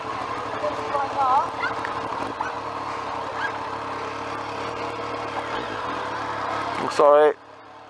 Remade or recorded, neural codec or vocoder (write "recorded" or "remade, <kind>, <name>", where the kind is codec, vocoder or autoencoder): recorded